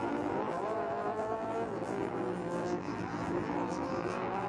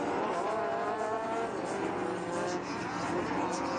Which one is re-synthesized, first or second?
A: first